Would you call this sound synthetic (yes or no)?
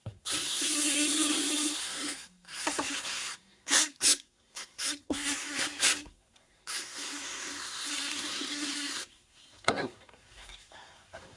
yes